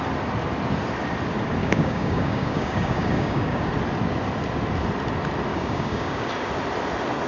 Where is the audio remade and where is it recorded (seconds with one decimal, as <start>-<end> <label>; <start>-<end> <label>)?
0.0-1.6 recorded; 1.6-3.7 remade; 3.7-5.5 recorded; 5.5-6.3 remade; 6.3-7.3 recorded